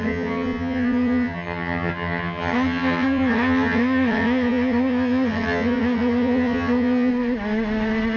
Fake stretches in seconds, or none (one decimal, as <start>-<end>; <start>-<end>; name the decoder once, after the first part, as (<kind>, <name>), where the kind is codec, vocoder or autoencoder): 0.0-7.1 (vocoder, HiFi-GAN)